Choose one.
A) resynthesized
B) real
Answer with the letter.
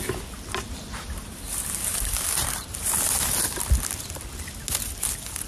B